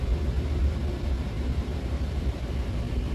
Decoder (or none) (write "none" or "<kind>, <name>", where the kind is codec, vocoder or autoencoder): vocoder, BigVGAN v2